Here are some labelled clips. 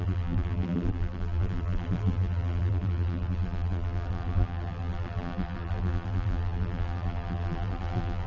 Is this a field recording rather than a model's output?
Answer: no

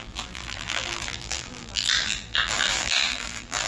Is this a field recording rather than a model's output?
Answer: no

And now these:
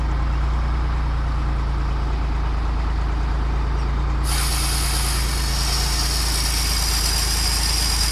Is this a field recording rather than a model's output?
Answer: yes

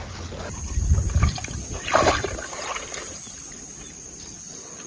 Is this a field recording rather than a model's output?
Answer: yes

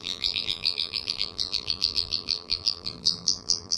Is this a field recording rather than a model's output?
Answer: no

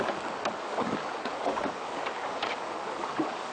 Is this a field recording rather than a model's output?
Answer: no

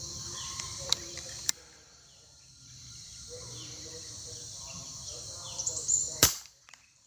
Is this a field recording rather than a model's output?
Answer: no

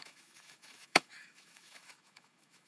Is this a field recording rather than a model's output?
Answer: no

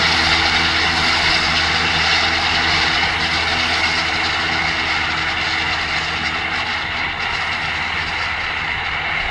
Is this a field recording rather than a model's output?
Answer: yes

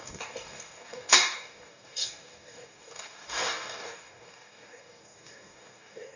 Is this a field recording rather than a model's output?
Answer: no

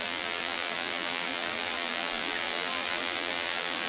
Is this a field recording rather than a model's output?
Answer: no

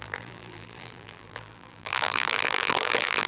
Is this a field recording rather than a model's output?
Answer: no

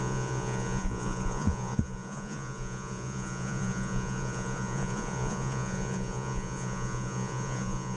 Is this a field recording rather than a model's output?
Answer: no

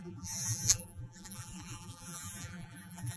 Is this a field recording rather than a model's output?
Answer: no